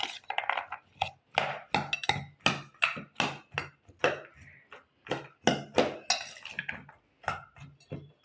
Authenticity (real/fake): real